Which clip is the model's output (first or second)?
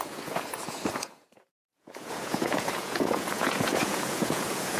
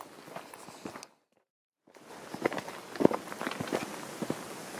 first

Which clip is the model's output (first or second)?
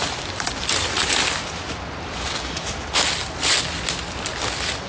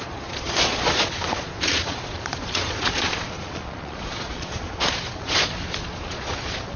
second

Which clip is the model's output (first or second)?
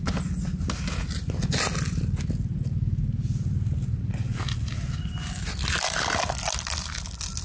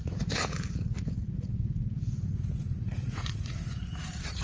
second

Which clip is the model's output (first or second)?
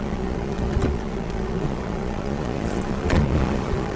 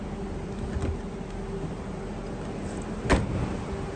first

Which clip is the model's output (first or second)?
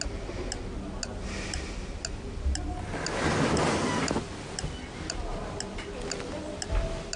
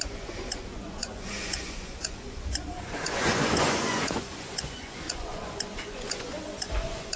second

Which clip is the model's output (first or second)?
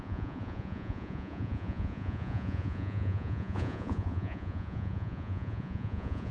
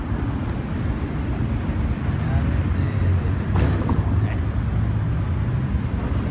first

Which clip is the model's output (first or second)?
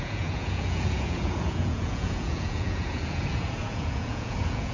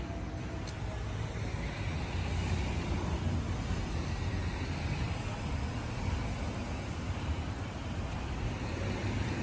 first